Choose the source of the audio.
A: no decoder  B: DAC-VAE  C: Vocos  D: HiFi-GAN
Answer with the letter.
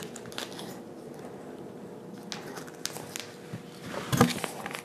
A